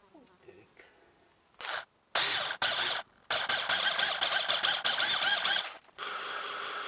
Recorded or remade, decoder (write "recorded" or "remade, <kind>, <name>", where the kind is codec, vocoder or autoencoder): recorded